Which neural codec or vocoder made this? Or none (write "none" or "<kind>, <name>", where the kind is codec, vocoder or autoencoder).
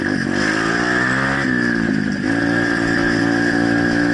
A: none